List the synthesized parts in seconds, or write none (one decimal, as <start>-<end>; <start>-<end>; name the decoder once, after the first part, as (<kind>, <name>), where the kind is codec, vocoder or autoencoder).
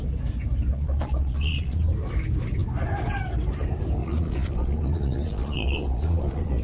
0.7-1.8 (vocoder, Vocos); 4.0-6.6